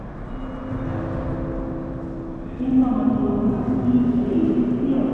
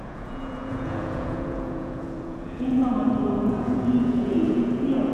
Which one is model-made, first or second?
second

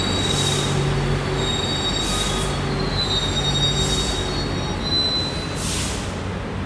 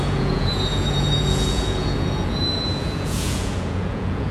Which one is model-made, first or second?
second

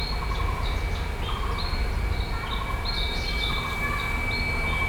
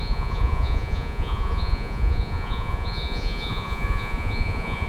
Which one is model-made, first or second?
second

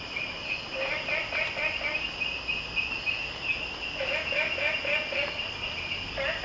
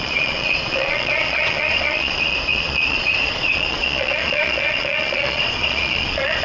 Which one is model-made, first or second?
second